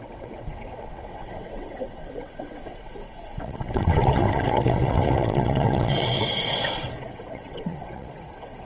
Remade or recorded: remade